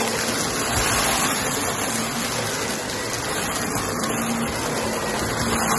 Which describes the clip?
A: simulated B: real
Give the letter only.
B